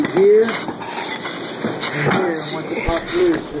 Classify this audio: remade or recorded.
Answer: recorded